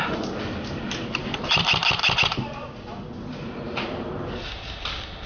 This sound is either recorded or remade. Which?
recorded